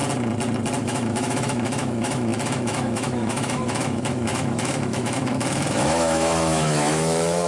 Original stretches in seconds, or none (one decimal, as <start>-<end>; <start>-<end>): 0.0-0.8